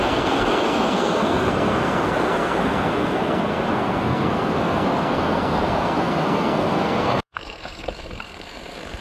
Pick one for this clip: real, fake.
fake